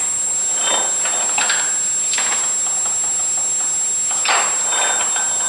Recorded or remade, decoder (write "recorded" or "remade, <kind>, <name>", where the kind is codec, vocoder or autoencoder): recorded